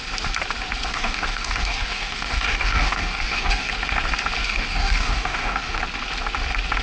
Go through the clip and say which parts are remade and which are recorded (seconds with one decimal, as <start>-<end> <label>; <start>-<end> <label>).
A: 0.0-0.9 recorded; 0.9-3.7 remade; 3.7-4.4 recorded; 4.4-5.8 remade; 5.8-6.8 recorded